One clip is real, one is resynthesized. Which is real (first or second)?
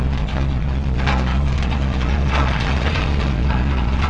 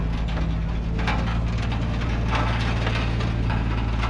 second